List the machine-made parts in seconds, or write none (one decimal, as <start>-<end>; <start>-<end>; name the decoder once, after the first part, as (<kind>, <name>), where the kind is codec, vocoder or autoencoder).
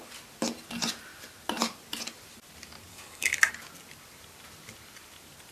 2.9-3.5 (codec, DAC)